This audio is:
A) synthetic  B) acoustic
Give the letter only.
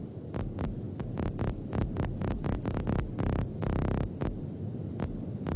B